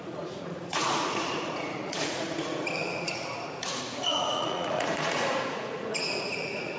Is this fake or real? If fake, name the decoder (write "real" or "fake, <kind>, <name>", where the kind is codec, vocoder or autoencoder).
fake, vocoder, Vocos